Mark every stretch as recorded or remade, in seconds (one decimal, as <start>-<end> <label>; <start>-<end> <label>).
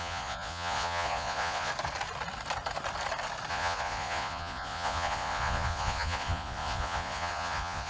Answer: 0.0-1.7 remade; 1.7-3.5 recorded; 3.5-7.9 remade